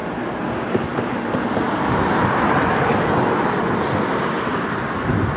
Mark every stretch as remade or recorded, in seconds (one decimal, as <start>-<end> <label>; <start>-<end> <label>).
0.0-5.4 recorded